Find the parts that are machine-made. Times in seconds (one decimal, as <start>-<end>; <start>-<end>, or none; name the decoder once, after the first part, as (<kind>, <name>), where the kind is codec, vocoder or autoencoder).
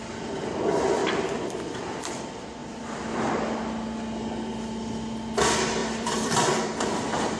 5.8-7.4 (vocoder, BigVGAN v2)